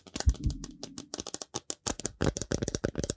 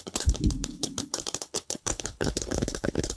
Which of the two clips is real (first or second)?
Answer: first